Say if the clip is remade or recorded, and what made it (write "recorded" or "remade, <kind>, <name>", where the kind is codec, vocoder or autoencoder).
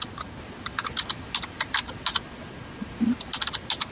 recorded